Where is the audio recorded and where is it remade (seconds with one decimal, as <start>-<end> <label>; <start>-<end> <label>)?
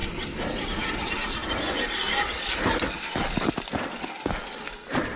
0.0-5.2 recorded